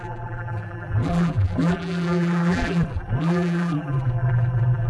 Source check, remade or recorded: remade